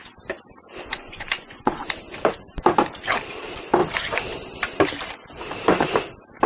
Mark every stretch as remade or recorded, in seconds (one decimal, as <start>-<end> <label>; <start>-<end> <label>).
0.0-0.9 recorded; 0.9-2.0 remade; 2.0-6.5 recorded